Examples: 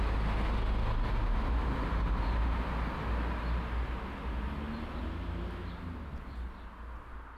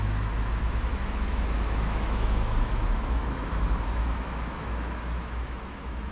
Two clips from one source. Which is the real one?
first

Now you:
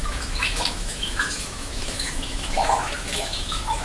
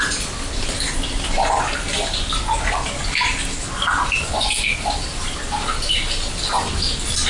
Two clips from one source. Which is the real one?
second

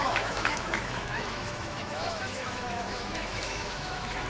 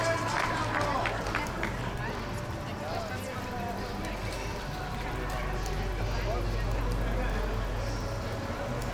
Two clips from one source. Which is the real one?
second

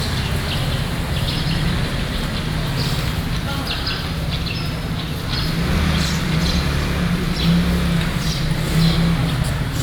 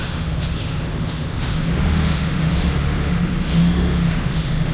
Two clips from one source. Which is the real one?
first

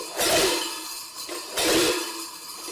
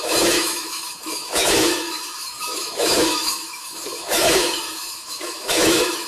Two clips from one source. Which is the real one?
first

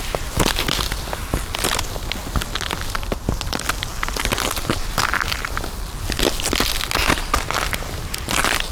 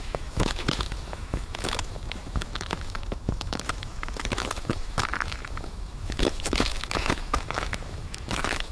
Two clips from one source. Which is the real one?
first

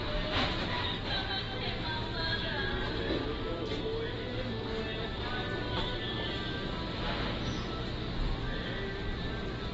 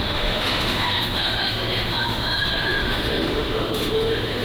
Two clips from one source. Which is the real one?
first